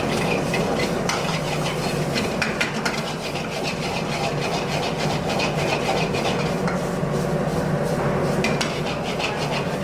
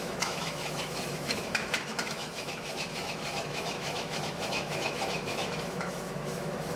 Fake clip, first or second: second